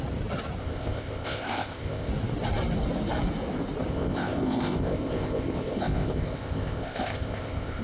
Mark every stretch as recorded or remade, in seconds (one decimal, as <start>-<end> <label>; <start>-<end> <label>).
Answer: 0.0-0.6 recorded; 0.6-2.1 remade; 2.1-3.9 recorded; 3.9-7.8 remade